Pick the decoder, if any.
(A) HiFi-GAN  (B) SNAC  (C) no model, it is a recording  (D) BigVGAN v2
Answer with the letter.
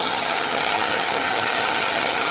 A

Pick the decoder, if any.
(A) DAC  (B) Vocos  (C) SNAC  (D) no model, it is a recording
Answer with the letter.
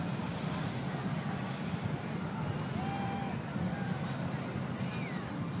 D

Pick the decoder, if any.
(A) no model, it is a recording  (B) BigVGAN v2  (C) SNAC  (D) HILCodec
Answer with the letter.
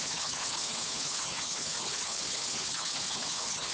D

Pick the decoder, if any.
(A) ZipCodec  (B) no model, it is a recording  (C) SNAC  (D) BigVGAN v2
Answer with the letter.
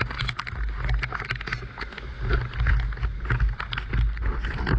B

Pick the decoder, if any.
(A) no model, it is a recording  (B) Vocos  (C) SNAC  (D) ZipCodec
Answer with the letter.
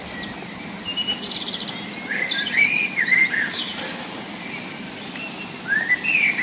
A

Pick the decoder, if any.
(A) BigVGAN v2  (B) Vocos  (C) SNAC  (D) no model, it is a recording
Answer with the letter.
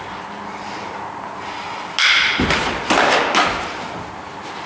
D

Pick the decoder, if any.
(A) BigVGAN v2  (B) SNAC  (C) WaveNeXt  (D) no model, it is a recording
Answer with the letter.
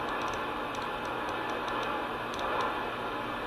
D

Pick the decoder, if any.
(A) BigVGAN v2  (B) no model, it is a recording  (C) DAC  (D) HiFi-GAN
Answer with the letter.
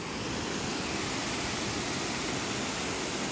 B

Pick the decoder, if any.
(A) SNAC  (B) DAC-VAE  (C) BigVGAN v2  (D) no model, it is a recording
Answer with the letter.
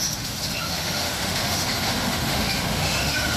B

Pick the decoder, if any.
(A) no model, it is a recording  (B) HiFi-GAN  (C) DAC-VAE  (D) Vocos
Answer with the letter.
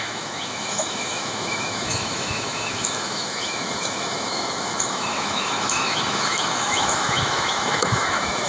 C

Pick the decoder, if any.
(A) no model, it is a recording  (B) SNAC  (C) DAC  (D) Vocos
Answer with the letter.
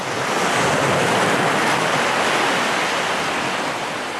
A